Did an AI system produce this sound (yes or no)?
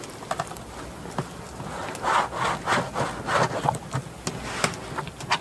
no